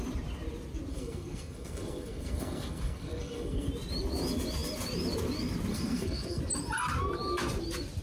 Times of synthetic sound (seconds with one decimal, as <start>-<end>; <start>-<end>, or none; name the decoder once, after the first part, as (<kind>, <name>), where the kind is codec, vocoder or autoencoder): 0.9-3.7 (codec, SNAC); 5.7-6.4